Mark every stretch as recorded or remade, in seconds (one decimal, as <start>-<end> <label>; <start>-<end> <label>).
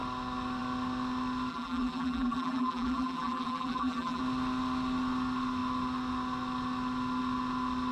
0.0-1.5 recorded; 1.5-4.2 remade; 4.2-7.9 recorded